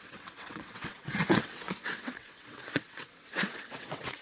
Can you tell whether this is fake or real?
fake